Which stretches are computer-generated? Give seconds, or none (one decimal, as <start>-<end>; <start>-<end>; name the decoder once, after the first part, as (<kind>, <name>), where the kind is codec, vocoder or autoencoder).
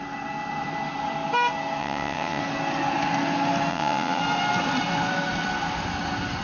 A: 1.8-2.4 (vocoder, WaveNeXt); 3.7-4.2